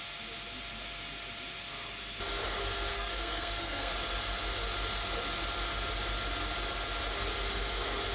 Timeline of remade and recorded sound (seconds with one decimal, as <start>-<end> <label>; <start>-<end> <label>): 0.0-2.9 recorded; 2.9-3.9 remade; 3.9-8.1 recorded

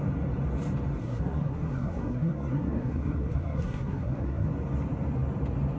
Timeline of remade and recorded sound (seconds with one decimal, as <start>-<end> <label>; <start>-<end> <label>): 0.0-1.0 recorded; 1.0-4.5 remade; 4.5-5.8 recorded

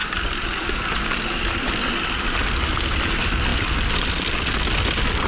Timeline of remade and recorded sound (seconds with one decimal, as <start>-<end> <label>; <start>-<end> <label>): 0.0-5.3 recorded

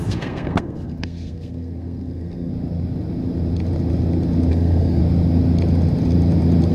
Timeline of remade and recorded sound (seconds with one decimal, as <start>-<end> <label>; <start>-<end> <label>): 0.0-2.5 remade; 2.5-4.5 recorded; 4.5-5.0 remade; 5.0-6.7 recorded

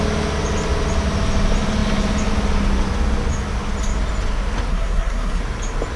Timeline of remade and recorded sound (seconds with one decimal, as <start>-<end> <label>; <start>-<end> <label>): 0.0-4.7 recorded; 4.7-5.4 remade; 5.4-6.0 recorded

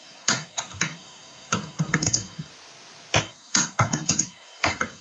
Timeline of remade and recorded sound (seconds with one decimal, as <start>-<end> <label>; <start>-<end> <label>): 0.0-2.5 remade; 2.5-3.2 recorded; 3.2-5.0 remade

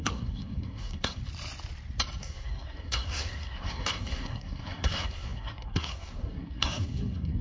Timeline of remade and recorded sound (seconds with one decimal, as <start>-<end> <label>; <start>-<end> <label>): 0.0-1.2 remade; 1.2-2.2 recorded; 2.2-7.4 remade